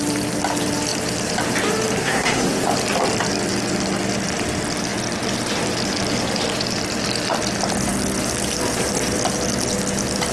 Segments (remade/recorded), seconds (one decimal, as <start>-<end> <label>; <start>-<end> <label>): 0.0-2.0 recorded; 2.0-2.5 remade; 2.5-10.3 recorded

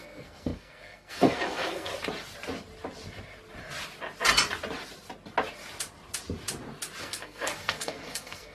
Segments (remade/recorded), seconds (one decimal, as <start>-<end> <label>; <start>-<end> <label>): 0.0-1.9 remade; 1.9-7.0 recorded; 7.0-8.5 remade